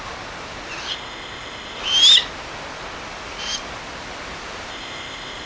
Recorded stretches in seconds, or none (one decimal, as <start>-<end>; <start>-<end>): 0.0-0.9; 1.8-4.7